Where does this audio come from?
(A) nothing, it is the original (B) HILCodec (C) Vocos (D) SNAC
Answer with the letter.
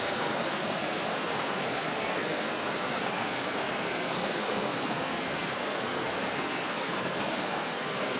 D